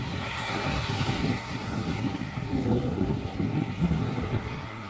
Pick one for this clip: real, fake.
fake